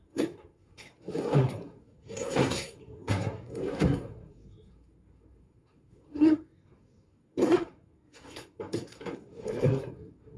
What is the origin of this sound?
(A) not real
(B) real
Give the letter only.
A